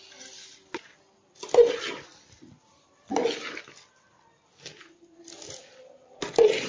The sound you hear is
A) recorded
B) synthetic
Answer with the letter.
A